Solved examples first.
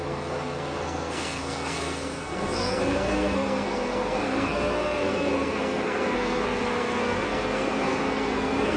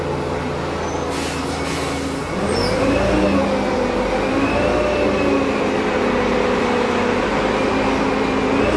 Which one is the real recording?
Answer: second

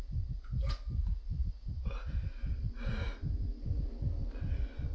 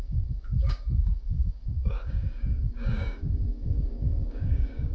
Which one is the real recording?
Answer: first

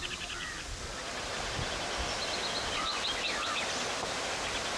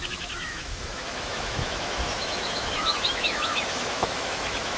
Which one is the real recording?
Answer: first